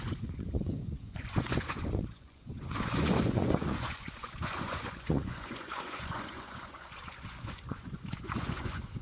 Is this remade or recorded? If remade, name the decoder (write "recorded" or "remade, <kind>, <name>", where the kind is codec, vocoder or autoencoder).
remade, vocoder, Vocos